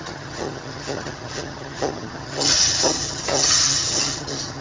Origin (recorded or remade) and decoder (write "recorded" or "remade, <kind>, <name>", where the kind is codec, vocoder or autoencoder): remade, vocoder, HiFi-GAN